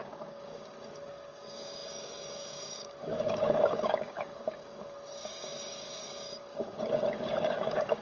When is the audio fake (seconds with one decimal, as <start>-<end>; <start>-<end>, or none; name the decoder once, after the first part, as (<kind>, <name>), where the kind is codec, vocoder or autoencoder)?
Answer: 0.0-8.0 (codec, DAC)